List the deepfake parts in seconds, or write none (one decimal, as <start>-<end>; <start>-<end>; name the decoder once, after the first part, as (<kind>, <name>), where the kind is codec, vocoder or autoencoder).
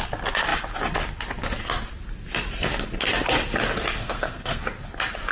4.0-4.6 (codec, SNAC)